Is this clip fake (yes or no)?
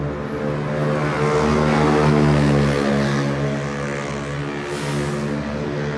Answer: no